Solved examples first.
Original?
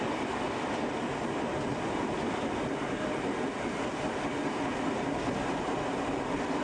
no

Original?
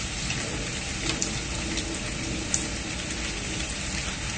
yes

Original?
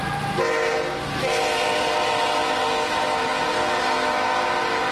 yes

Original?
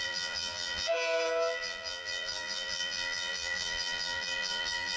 no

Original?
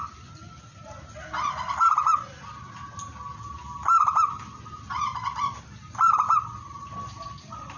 yes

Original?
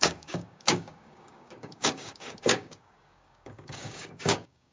no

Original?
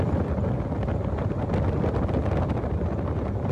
yes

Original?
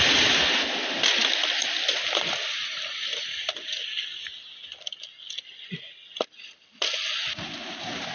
yes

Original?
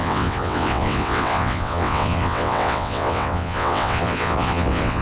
no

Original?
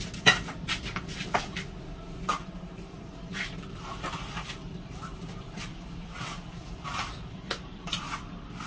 no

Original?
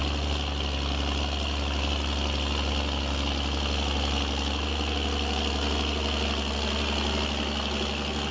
yes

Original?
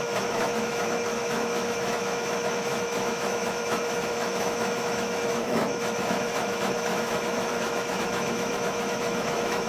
no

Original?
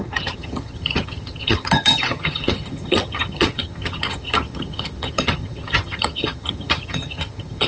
no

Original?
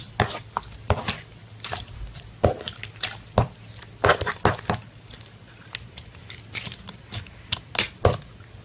yes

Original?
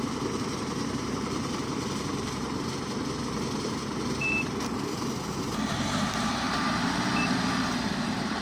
no